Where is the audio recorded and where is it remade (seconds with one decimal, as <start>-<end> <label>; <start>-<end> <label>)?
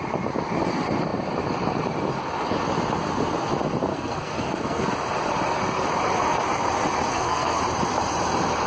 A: 0.0-3.9 recorded; 3.9-4.9 remade; 4.9-7.1 recorded; 7.1-7.6 remade; 7.6-8.7 recorded